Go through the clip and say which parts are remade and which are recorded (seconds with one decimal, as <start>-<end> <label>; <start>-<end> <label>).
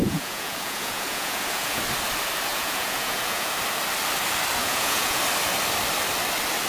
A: 0.0-1.8 remade; 1.8-2.5 recorded; 2.5-3.5 remade; 3.5-4.6 recorded; 4.6-5.2 remade; 5.2-6.7 recorded